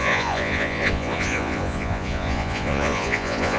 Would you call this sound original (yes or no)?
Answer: no